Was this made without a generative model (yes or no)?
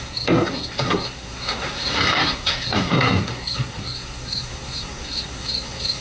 no